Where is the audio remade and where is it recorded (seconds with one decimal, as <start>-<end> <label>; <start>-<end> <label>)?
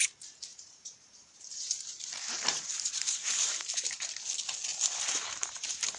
0.0-0.5 recorded; 0.5-4.1 remade; 4.1-4.7 recorded; 4.7-6.0 remade